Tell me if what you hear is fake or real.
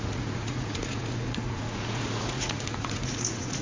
fake